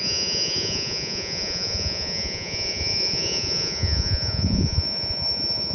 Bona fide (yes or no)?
no